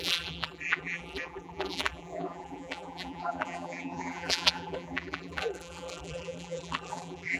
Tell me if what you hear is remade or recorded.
remade